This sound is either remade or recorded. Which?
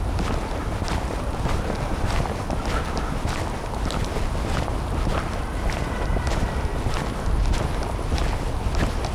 recorded